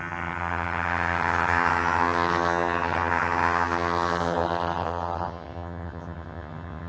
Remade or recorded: remade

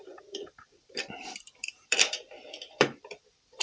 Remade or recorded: remade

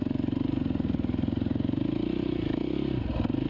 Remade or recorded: recorded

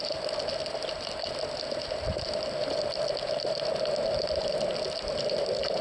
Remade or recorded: recorded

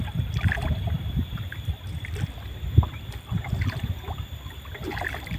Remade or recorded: remade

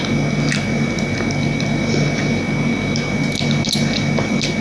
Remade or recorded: recorded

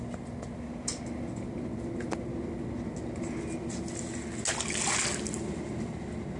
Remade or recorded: recorded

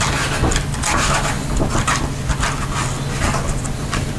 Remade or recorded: recorded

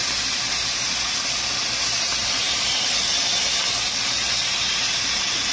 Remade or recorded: recorded